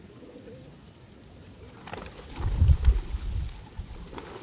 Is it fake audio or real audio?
real